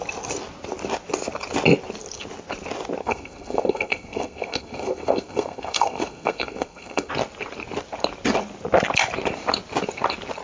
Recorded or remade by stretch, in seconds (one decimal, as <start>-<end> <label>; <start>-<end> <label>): 0.0-3.0 recorded; 3.0-7.1 remade; 7.1-10.4 recorded